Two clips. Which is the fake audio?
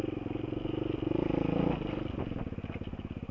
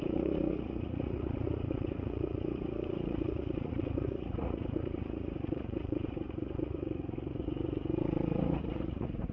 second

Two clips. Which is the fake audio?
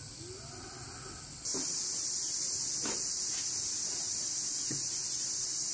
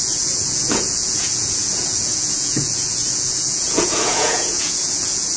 second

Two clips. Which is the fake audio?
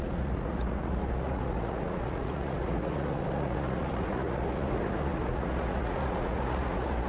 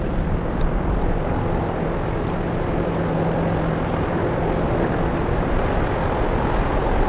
first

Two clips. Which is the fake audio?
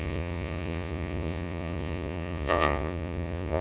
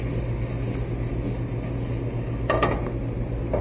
first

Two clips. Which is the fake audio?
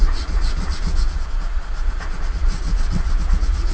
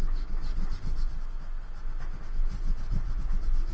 first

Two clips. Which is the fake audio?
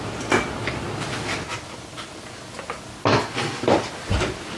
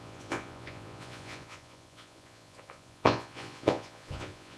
second